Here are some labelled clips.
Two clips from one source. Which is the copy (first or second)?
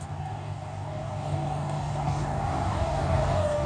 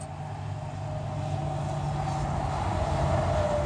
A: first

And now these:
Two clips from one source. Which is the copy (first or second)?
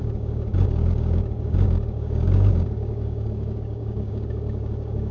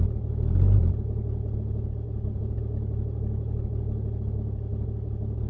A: first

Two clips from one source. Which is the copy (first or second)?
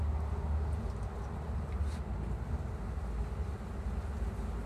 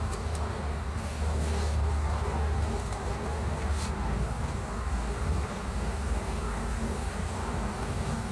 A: second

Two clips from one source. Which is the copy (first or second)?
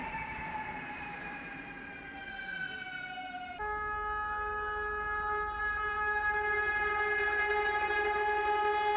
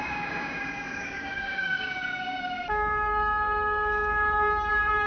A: second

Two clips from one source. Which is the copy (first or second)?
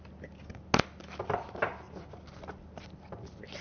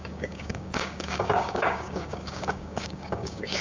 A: second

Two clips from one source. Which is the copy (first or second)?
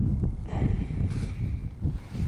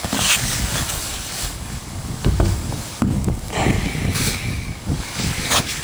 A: second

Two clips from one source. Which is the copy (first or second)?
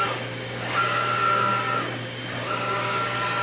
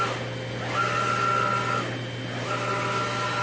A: first